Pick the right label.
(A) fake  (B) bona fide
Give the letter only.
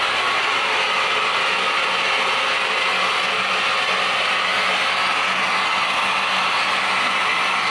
B